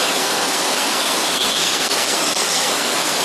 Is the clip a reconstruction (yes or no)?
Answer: yes